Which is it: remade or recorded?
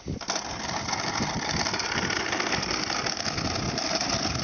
recorded